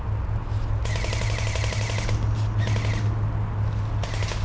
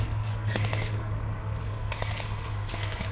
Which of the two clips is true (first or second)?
first